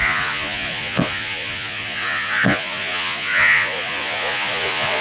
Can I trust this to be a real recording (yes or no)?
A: no